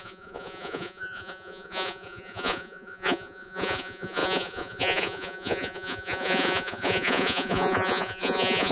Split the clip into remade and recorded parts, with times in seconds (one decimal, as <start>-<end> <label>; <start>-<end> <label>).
0.0-8.7 remade